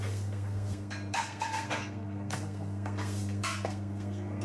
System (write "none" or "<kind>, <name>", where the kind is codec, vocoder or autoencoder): codec, SNAC